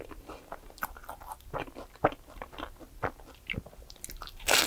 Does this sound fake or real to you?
real